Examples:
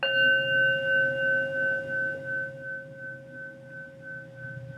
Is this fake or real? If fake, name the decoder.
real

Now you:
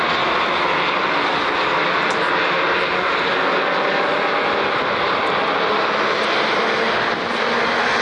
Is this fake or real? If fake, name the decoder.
real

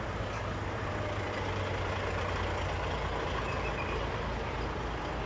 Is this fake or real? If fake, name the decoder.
real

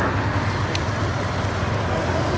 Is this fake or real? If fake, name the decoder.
real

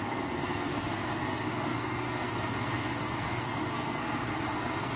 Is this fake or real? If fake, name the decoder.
fake, codec, SNAC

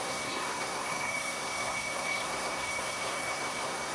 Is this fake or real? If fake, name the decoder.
fake, codec, SNAC